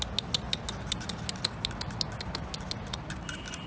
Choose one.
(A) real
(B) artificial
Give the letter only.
A